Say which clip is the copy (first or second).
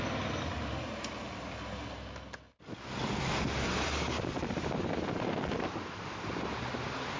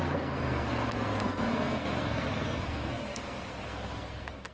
second